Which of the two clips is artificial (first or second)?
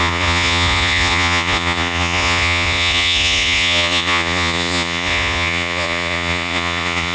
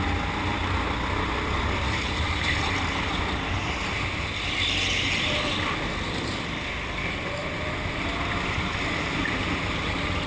first